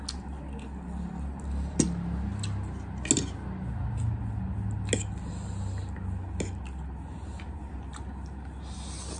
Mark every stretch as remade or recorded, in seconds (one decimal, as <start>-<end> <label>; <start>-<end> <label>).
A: 0.0-9.2 recorded